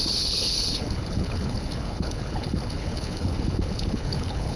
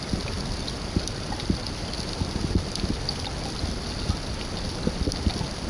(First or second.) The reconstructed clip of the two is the first